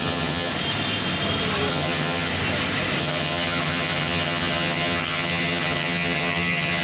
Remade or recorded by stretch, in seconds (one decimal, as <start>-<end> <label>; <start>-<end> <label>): 0.0-0.5 remade; 0.5-1.7 recorded; 1.7-2.3 remade; 2.3-3.0 recorded; 3.0-6.8 remade